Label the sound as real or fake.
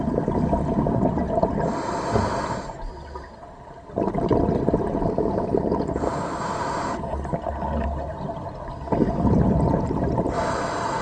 real